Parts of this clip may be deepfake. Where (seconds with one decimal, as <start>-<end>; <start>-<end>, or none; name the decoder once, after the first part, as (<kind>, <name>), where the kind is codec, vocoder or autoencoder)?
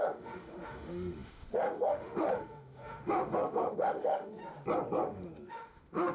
0.0-4.4 (autoencoder, DAC-VAE); 5.0-6.1